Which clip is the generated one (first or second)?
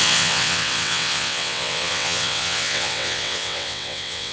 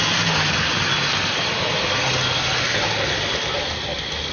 first